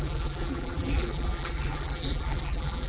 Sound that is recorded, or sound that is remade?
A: remade